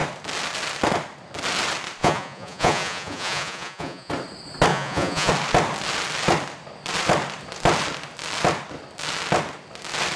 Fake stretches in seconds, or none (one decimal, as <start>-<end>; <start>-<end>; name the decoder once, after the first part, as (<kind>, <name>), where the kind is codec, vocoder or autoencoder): 2.0-4.1 (vocoder, Vocos); 4.7-5.3